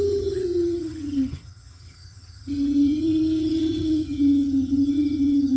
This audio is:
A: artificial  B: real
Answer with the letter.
A